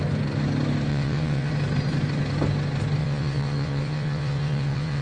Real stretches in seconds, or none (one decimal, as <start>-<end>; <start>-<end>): 0.0-0.9; 1.5-3.0